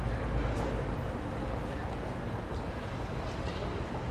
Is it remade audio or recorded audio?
recorded